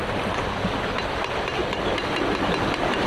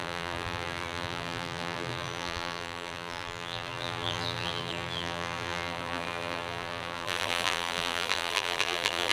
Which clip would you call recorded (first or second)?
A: first